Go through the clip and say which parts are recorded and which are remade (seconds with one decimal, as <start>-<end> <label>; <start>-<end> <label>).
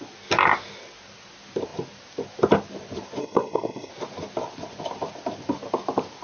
0.0-3.2 recorded; 3.2-3.9 remade; 3.9-6.2 recorded